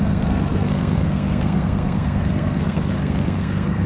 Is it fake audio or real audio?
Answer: fake